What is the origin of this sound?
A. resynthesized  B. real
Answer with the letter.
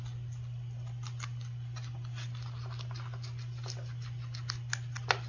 B